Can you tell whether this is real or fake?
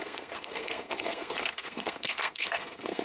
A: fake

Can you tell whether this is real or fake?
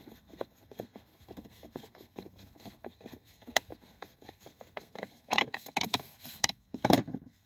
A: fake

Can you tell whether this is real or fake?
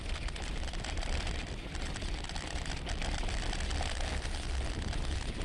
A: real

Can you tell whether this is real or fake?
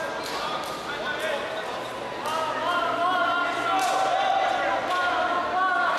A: real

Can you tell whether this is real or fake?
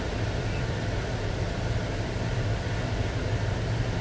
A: real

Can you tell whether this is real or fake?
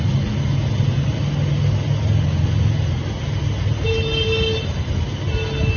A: real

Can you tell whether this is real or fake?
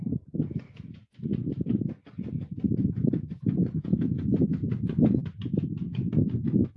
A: real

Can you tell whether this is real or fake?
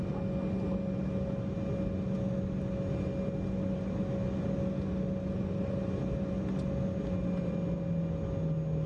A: real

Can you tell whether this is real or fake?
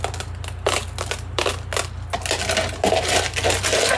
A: real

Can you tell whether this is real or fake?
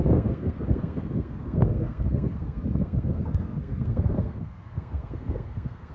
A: fake